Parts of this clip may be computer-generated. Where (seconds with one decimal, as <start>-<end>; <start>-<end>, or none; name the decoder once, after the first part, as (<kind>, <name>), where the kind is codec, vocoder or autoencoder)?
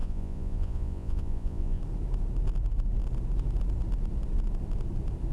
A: 0.0-1.8 (vocoder, Vocos)